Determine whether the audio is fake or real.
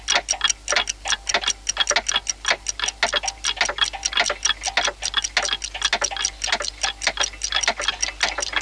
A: real